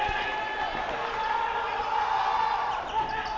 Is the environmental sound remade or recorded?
recorded